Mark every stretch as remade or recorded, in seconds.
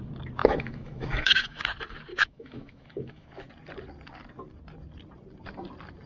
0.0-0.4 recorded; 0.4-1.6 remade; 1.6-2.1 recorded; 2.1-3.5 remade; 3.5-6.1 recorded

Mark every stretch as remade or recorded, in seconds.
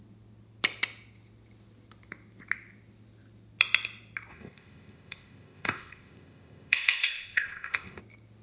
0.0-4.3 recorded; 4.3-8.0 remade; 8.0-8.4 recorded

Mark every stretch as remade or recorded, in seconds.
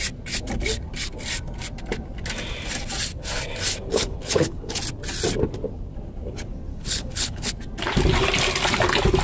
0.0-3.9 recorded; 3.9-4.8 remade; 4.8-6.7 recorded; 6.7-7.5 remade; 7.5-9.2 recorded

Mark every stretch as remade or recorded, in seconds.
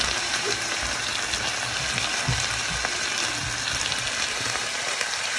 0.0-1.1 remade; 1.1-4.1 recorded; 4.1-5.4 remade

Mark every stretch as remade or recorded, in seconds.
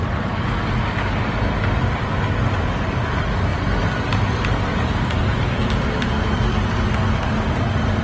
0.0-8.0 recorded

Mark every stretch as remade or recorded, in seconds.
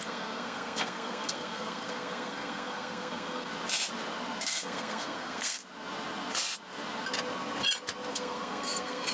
0.0-3.5 remade; 3.5-4.4 recorded; 4.4-5.6 remade; 5.6-8.1 recorded; 8.1-9.1 remade